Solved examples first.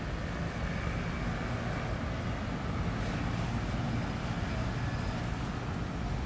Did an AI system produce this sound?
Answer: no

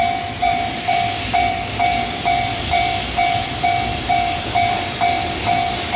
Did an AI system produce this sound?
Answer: yes